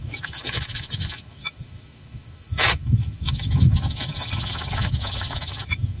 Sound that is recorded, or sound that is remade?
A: remade